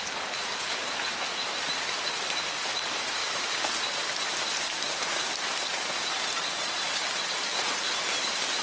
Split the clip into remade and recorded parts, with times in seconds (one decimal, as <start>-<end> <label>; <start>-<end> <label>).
0.0-3.2 recorded; 3.2-4.4 remade; 4.4-8.6 recorded